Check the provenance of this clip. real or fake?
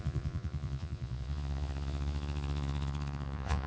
fake